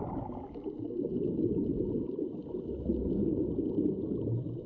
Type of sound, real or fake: real